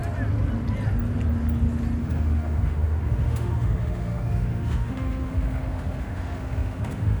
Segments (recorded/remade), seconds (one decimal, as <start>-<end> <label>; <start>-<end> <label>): 0.0-2.0 recorded; 2.0-7.2 remade